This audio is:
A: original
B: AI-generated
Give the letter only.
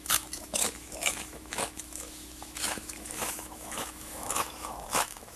B